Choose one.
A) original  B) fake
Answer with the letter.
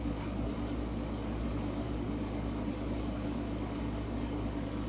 B